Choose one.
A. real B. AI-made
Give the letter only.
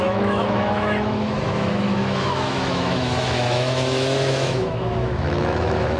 B